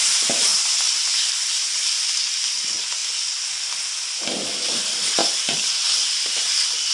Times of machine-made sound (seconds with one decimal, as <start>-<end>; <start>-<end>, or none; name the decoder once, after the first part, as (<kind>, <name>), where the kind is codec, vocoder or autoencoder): 0.5-2.0 (vocoder, BigVGAN v2); 5.2-6.9